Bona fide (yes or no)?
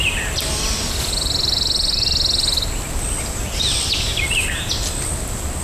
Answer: yes